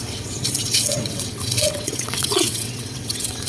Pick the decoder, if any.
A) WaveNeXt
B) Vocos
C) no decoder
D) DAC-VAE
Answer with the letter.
A